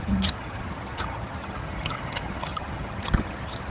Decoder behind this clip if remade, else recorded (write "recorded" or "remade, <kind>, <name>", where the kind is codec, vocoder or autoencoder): remade, vocoder, HiFi-GAN